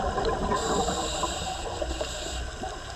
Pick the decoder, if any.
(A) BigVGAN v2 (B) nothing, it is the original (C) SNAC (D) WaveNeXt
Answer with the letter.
A